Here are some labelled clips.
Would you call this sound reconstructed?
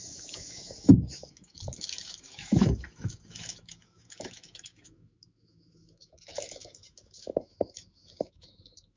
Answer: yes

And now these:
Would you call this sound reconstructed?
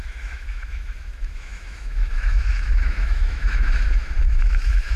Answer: yes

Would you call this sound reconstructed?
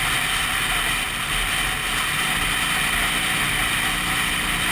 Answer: no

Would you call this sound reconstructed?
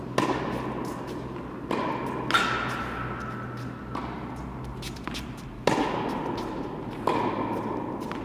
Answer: no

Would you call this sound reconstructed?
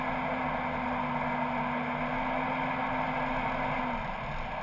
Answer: no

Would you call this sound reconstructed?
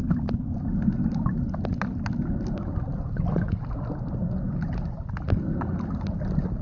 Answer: no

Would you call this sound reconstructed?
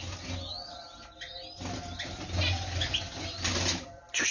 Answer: no